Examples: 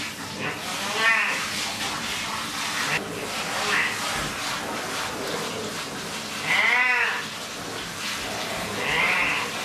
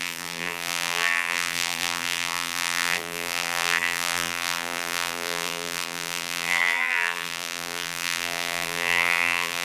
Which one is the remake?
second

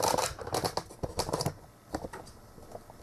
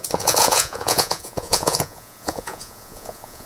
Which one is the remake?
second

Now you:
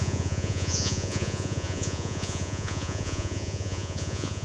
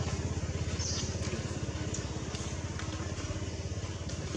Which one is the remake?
first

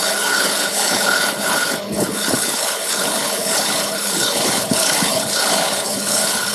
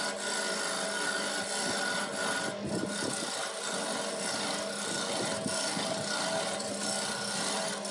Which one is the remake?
first